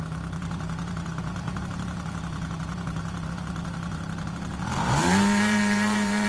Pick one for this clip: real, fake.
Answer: fake